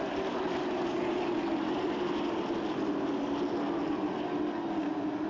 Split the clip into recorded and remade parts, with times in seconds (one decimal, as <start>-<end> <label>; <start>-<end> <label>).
0.0-5.3 recorded